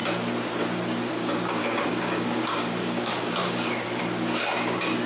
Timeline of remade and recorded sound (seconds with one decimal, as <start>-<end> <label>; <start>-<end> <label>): 0.0-1.6 recorded; 1.6-4.0 remade; 4.0-5.1 recorded